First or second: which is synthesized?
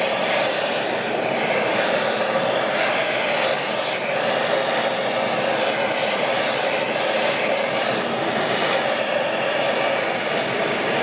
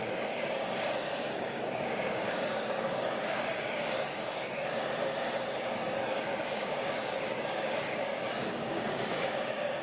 second